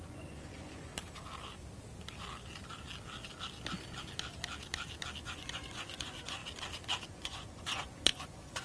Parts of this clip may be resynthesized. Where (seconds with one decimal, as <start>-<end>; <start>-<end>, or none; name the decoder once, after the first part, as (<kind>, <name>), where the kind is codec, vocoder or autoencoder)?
0.0-0.9 (vocoder, Vocos); 5.2-6.4; 7.1-8.6

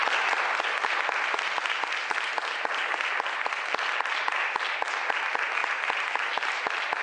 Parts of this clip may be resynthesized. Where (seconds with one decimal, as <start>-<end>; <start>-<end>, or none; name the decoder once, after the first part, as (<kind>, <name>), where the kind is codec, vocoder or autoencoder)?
none